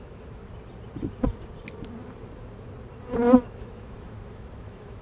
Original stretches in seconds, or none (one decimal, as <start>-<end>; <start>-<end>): 0.4-3.4

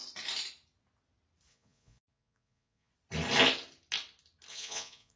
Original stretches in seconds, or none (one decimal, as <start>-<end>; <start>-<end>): 0.0-1.5; 2.9-4.5

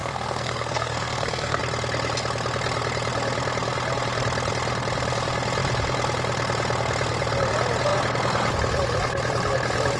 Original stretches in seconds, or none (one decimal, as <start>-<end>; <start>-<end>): 1.6-10.0

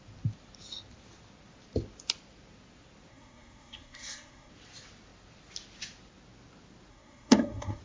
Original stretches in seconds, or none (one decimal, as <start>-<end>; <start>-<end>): 0.0-3.1; 4.5-6.9

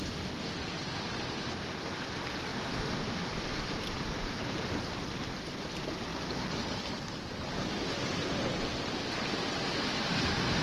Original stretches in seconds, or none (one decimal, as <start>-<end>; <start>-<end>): 0.0-10.6

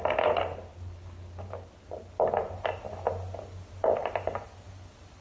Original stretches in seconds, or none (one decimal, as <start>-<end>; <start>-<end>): 0.0-5.2

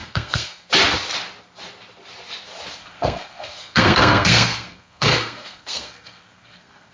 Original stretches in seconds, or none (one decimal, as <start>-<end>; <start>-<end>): 0.7-2.8